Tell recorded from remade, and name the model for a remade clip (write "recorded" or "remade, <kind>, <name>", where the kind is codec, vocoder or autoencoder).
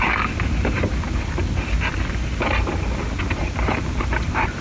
recorded